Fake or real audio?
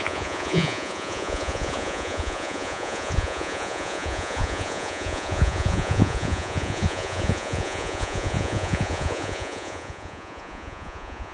fake